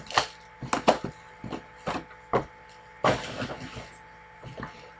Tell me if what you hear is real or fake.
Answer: real